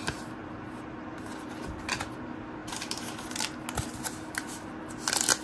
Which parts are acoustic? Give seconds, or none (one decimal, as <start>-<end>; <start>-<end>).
0.0-5.4